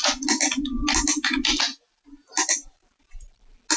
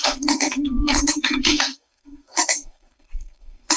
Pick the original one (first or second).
first